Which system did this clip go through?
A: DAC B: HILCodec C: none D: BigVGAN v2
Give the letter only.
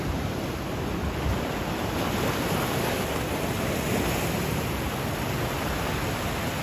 C